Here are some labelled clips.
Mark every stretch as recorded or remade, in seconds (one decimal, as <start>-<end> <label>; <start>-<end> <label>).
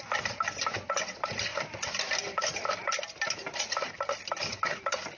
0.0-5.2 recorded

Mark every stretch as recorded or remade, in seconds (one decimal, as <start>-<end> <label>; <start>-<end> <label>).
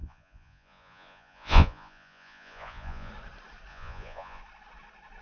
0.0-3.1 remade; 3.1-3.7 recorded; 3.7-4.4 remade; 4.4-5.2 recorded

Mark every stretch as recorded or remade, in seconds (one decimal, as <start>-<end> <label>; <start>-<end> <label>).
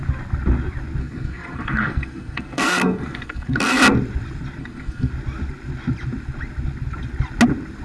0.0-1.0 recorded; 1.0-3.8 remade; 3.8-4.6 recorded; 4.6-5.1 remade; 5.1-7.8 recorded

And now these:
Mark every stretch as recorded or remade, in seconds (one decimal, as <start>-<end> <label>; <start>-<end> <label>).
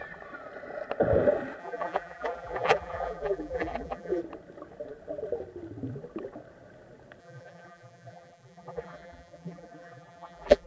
0.0-1.6 recorded; 1.6-4.2 remade; 4.2-7.2 recorded; 7.2-10.7 remade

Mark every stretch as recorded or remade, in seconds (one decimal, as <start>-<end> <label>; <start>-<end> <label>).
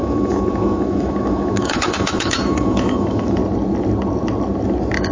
0.0-3.4 remade; 3.4-5.1 recorded